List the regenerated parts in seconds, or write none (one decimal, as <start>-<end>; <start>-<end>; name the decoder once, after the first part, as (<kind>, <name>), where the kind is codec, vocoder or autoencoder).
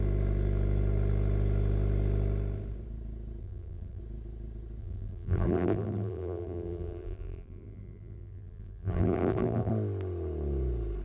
3.4-4.0 (vocoder, BigVGAN v2); 4.8-9.7